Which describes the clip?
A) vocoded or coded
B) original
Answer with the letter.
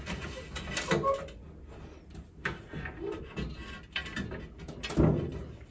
B